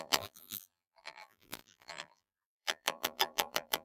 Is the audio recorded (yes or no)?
no